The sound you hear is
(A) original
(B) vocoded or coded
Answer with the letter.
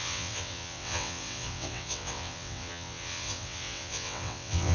B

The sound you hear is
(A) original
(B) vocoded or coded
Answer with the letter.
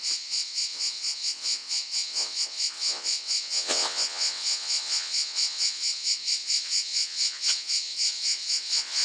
B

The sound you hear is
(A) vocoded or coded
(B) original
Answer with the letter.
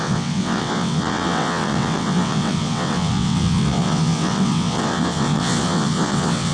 A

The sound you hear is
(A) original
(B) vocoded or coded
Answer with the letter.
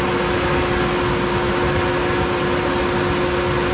A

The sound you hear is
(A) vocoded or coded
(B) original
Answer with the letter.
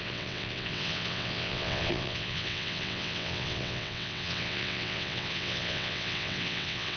A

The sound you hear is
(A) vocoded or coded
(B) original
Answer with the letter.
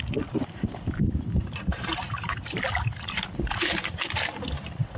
B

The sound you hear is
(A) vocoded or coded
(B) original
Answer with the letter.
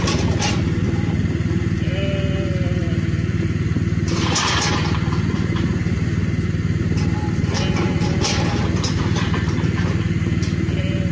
B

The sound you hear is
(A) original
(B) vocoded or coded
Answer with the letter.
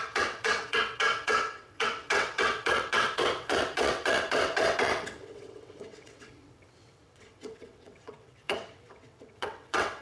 B